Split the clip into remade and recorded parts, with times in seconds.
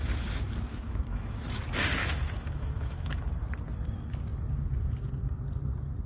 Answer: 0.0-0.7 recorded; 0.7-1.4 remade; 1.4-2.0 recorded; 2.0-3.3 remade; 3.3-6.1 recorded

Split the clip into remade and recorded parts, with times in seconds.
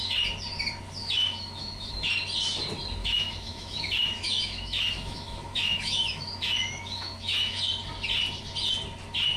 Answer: 0.0-1.0 recorded; 1.0-2.1 remade; 2.1-3.0 recorded; 3.0-7.6 remade; 7.6-9.4 recorded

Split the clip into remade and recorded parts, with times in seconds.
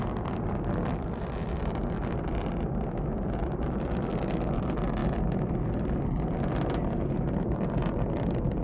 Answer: 0.0-8.6 recorded